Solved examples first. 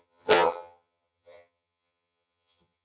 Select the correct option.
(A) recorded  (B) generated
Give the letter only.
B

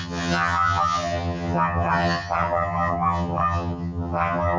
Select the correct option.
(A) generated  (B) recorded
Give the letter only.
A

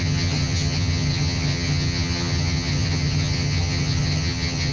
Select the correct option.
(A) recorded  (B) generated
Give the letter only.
B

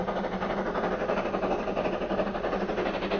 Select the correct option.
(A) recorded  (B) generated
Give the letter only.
A